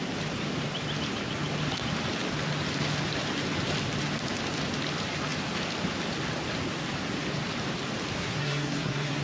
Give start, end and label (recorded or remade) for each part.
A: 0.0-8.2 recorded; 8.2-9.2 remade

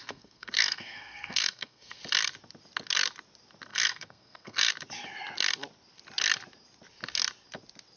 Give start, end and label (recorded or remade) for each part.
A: 0.0-2.0 remade; 2.0-3.7 recorded; 3.7-4.7 remade; 4.7-8.0 recorded